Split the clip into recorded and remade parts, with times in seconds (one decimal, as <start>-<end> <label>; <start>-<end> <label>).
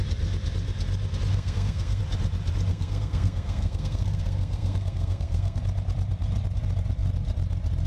0.0-1.3 recorded; 1.3-2.0 remade; 2.0-2.7 recorded; 2.7-5.6 remade; 5.6-7.9 recorded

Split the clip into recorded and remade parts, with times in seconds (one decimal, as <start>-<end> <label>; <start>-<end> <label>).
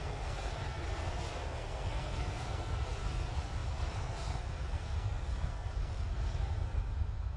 0.0-7.4 remade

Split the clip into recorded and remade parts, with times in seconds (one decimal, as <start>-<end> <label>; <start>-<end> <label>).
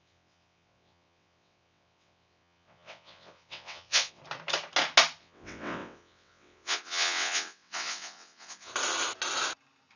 0.0-4.2 remade; 4.2-5.2 recorded; 5.2-8.7 remade; 8.7-10.0 recorded